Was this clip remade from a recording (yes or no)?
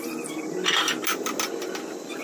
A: no